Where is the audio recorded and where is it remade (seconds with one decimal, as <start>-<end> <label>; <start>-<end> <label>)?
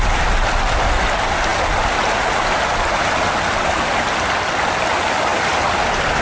0.0-6.2 recorded